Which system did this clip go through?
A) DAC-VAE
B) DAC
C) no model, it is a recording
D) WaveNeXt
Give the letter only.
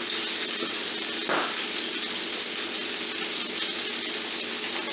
C